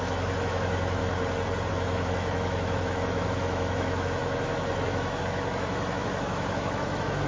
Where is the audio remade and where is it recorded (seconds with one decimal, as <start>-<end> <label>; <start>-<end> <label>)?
0.0-1.0 remade; 1.0-1.7 recorded; 1.7-7.3 remade